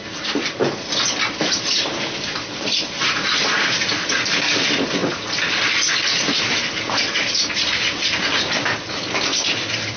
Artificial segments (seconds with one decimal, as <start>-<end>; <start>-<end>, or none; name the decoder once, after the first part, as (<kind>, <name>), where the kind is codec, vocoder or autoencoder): 0.0-5.0 (vocoder, BigVGAN v2); 8.9-10.0